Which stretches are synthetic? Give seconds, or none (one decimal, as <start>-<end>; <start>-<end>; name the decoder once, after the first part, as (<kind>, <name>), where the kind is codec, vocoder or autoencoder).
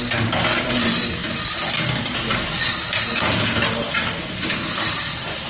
none